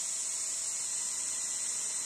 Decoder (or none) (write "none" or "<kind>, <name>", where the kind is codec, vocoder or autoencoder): none